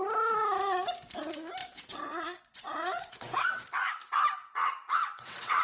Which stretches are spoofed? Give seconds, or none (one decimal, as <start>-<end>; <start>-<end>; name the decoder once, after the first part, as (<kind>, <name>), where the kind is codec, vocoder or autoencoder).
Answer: 1.6-3.5 (vocoder, WaveNeXt); 4.4-5.6